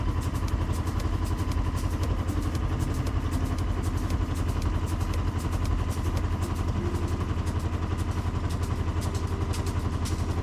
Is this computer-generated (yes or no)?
no